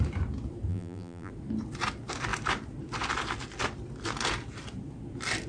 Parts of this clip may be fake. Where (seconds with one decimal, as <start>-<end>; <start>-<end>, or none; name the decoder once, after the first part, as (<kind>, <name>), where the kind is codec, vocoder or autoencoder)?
0.7-1.3 (vocoder, BigVGAN v2)